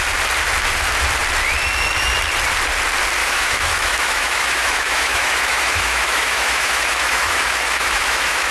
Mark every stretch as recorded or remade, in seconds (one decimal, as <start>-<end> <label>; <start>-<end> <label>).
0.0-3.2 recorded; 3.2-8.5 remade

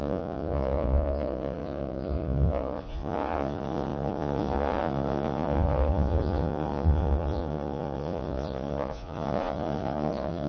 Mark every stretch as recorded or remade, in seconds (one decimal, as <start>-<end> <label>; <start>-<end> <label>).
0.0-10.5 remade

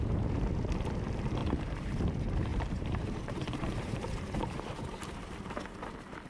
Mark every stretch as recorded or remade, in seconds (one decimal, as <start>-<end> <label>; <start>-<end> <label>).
0.0-1.4 recorded; 1.4-2.0 remade; 2.0-2.5 recorded; 2.5-4.3 remade; 4.3-6.3 recorded

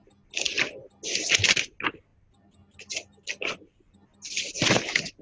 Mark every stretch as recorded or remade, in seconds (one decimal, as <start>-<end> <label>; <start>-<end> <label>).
0.0-5.2 recorded

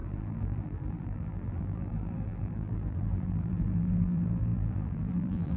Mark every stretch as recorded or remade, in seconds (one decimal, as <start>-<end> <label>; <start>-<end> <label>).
0.0-5.6 remade

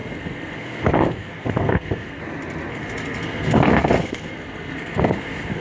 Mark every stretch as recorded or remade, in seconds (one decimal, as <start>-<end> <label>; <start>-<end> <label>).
0.0-2.2 remade; 2.2-2.7 recorded; 2.7-5.6 remade